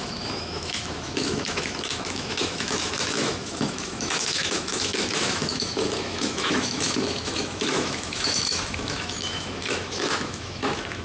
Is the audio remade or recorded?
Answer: remade